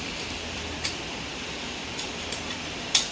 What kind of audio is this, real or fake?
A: fake